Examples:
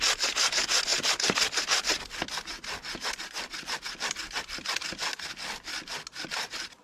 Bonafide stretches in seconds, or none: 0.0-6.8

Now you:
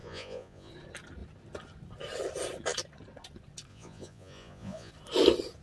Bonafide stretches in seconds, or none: 0.7-3.7; 4.9-5.6